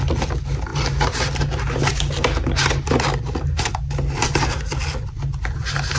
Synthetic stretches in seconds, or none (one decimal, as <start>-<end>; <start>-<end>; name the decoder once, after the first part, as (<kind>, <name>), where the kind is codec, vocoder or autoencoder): none